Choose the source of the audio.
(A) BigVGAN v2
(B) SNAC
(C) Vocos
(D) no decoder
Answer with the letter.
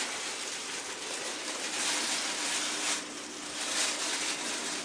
D